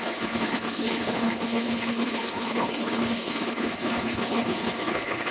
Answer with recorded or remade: remade